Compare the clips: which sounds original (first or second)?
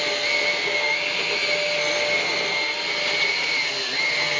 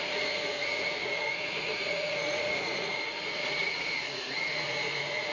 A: first